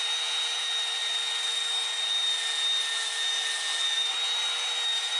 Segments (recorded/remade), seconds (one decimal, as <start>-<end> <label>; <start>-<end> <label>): 0.0-5.2 recorded

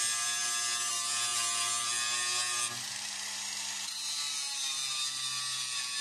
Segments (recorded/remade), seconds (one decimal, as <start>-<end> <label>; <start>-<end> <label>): 0.0-6.0 recorded

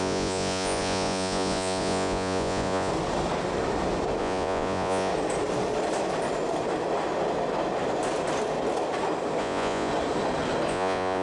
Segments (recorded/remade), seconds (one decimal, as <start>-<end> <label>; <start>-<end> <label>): 0.0-2.9 remade; 2.9-4.2 recorded; 4.2-5.1 remade; 5.1-9.4 recorded; 9.4-9.9 remade; 9.9-10.7 recorded; 10.7-11.2 remade

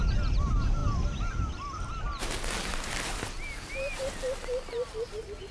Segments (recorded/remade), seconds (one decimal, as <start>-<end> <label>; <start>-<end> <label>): 0.0-5.5 recorded

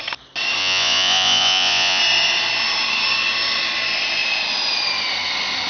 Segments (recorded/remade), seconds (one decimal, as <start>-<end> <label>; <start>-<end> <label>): 0.0-0.6 recorded; 0.6-2.0 remade; 2.0-5.7 recorded

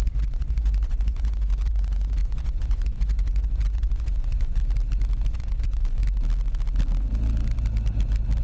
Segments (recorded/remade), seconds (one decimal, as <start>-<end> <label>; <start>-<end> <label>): 0.0-4.6 remade; 4.6-5.3 recorded; 5.3-6.0 remade; 6.0-8.4 recorded